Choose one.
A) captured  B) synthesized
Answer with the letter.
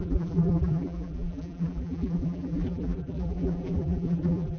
B